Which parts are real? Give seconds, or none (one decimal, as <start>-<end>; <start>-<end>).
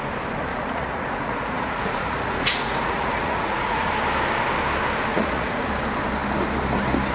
0.0-0.5; 3.9-5.1; 5.7-7.1